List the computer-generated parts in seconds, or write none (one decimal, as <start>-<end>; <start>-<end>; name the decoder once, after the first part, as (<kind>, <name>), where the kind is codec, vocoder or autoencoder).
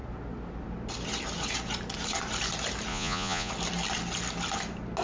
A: 2.9-3.5 (vocoder, Vocos)